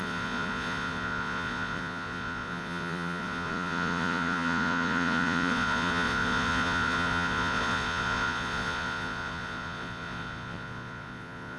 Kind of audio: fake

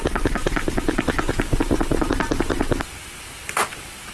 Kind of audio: real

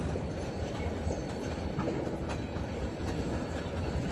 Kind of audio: real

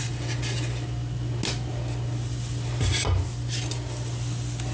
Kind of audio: real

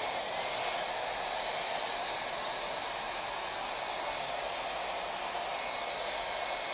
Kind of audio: real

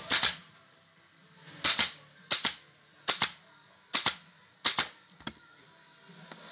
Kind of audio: real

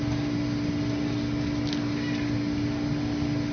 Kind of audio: real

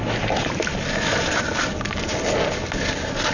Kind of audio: real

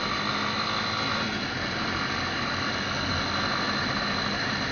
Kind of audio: real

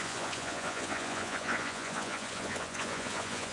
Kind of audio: fake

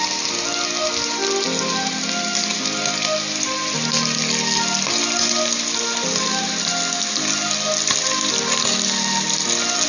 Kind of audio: real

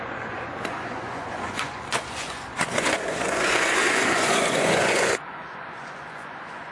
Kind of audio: fake